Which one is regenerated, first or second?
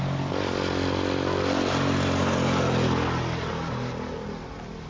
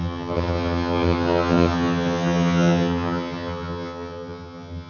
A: second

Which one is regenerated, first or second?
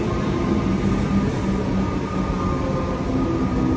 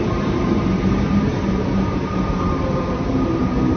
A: second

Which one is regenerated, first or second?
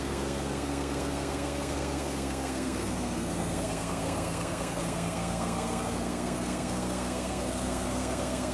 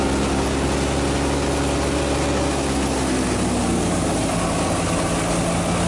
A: first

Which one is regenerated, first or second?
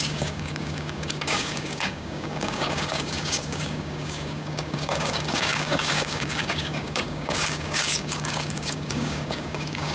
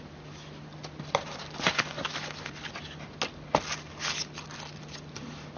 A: first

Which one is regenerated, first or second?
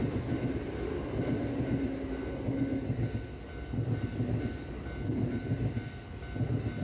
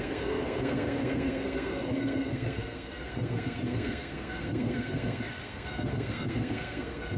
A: second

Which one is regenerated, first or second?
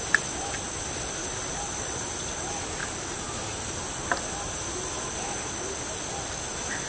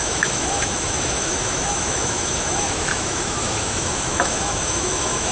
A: second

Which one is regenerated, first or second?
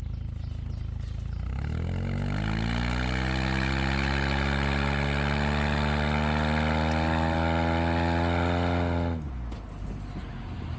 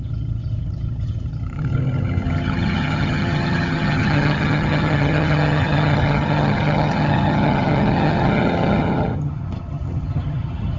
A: second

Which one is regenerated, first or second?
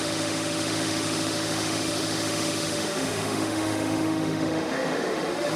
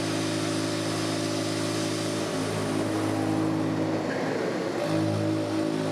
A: first